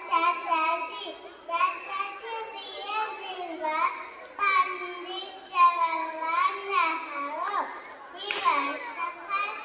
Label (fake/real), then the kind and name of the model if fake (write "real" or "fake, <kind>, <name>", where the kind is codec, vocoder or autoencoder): real